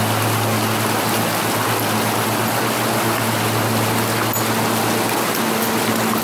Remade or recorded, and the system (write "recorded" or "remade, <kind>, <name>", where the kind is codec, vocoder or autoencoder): recorded